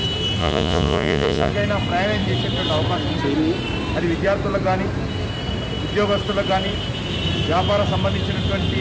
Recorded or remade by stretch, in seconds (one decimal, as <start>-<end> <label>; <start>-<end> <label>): 0.0-0.4 recorded; 0.4-1.5 remade; 1.5-8.8 recorded